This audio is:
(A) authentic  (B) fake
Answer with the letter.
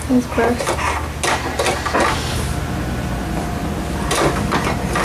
A